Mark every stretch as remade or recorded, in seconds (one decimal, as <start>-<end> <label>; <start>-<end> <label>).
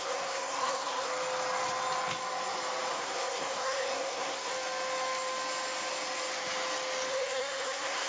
0.0-1.1 remade; 1.1-2.9 recorded; 2.9-4.5 remade; 4.5-7.1 recorded; 7.1-8.1 remade